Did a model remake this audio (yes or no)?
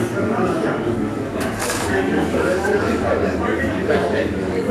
yes